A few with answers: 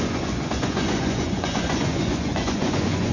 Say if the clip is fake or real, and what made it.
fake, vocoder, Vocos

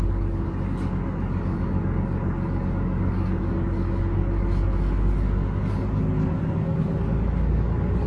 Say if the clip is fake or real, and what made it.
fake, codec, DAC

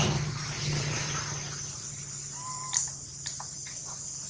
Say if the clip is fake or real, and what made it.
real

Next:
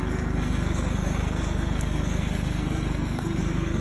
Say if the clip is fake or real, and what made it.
fake, codec, SNAC